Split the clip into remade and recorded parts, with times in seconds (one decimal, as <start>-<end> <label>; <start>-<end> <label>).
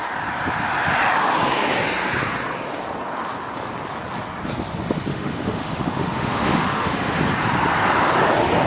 0.0-5.1 recorded; 5.1-7.2 remade; 7.2-8.7 recorded